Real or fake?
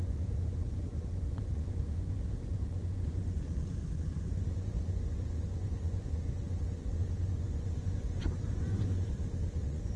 fake